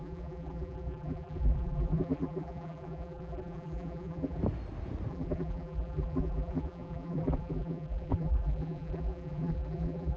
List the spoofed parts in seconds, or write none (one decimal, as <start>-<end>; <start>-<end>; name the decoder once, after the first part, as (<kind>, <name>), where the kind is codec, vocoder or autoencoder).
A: 0.0-4.4 (vocoder, BigVGAN v2); 5.1-10.2